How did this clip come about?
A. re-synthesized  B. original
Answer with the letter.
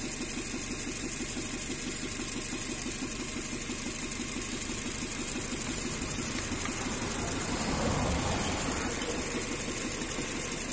B